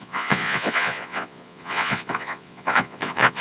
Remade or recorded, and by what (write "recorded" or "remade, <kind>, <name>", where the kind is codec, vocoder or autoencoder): remade, vocoder, Vocos